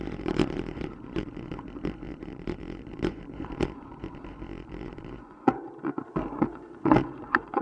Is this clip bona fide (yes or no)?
no